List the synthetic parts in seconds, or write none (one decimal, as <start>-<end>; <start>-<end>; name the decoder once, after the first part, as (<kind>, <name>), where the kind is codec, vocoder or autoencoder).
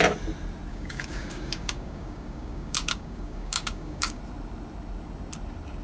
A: 0.7-4.2 (codec, DAC)